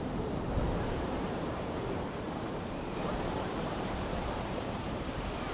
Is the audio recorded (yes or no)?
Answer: no